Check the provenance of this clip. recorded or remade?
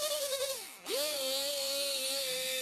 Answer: remade